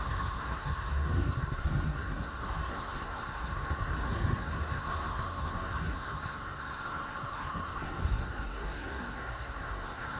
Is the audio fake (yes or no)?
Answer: yes